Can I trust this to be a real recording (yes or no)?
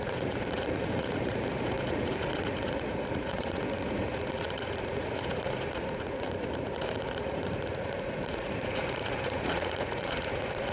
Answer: no